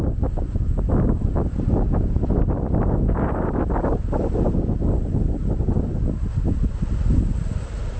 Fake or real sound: real